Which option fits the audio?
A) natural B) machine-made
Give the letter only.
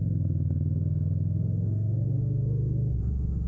B